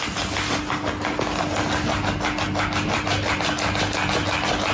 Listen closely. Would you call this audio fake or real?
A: real